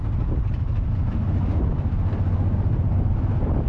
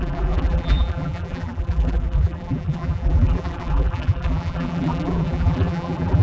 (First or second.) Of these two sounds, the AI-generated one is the second